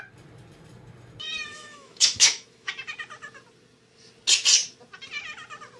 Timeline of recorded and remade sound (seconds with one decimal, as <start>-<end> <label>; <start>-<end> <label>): 0.0-1.5 recorded; 1.5-2.7 remade; 2.7-5.8 recorded